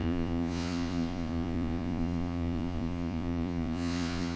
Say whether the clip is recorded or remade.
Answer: remade